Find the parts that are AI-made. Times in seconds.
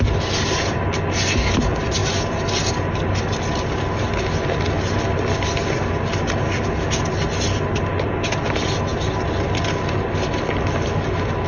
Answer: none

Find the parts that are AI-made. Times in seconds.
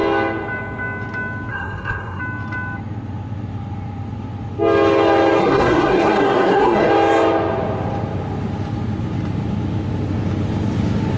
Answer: 1.5-2.2 (codec, SNAC); 5.4-6.9